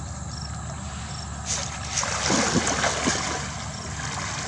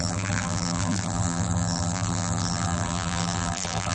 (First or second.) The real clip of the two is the first